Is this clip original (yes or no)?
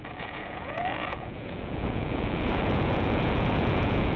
no